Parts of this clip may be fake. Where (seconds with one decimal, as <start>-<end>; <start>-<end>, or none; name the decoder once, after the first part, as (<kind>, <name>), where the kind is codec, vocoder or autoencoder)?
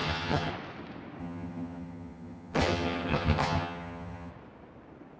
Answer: 0.0-0.5 (vocoder, HiFi-GAN); 1.2-4.3